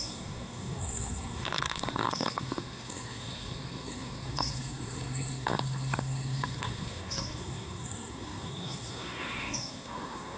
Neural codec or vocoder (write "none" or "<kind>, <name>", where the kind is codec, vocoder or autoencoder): codec, SNAC